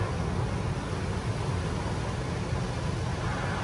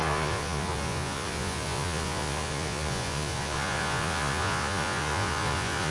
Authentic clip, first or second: first